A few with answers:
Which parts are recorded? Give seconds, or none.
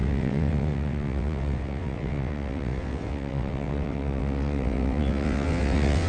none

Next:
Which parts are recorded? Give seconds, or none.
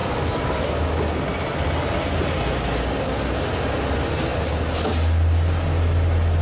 0.0-6.4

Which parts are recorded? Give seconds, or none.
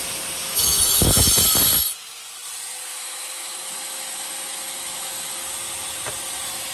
0.0-0.5; 1.3-2.9; 5.5-6.7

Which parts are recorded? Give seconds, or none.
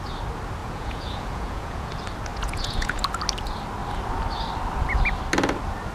0.0-0.6; 1.9-2.3; 3.0-5.9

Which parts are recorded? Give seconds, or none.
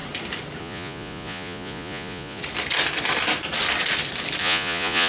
0.0-0.6; 2.4-4.4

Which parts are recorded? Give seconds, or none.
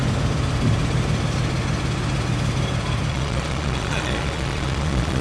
0.0-3.1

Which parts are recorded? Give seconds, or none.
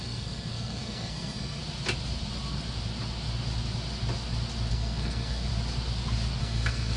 1.6-4.7; 5.5-6.4